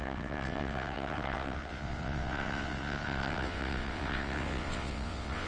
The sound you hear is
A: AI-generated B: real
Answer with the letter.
A